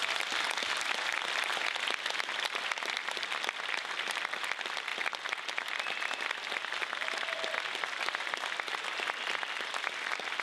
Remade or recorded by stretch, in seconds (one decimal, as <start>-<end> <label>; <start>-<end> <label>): 0.0-10.4 recorded